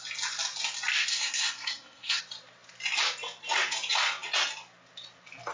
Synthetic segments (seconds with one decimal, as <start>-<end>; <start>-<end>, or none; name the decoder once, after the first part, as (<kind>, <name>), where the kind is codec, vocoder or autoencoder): 1.1-2.2 (codec, SNAC)